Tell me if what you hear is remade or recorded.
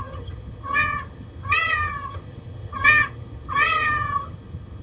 remade